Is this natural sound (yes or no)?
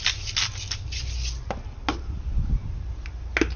yes